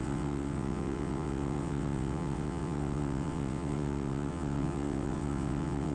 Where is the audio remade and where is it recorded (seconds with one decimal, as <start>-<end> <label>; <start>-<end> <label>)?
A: 0.0-5.9 remade